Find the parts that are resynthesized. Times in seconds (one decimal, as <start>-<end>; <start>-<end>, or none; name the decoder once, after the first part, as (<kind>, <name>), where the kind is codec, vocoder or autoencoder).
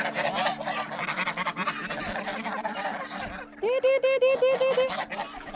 none